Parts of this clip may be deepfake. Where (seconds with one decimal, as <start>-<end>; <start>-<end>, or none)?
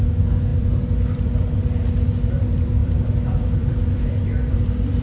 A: 0.5-1.6; 2.8-4.6